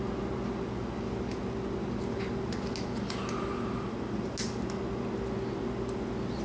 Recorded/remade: recorded